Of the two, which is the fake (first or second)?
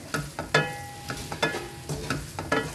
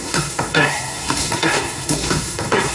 second